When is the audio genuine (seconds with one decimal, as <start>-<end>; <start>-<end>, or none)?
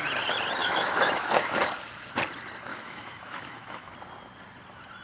0.0-0.6; 1.6-2.7; 3.9-5.0